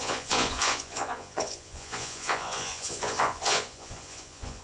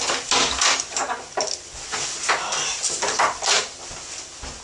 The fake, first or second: first